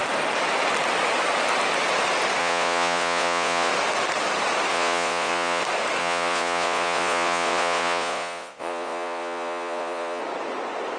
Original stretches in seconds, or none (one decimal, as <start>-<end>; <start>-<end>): 0.0-2.4; 3.7-4.7; 5.6-6.0; 10.2-11.0